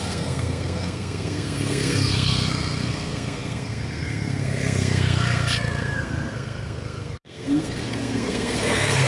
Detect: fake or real fake